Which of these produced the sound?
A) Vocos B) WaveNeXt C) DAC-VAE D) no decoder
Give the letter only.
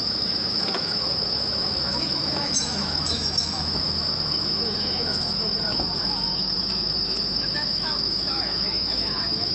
C